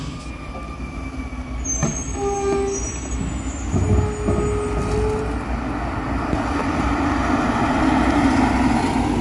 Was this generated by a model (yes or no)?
no